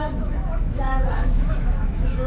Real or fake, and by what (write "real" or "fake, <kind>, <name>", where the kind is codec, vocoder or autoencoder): fake, autoencoder, DAC-VAE